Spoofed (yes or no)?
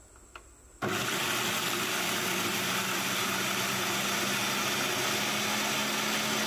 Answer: no